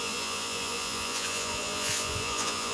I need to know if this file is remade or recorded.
remade